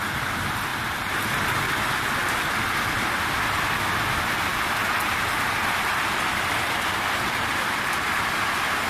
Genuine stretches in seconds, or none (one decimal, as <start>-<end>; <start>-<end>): 0.7-3.7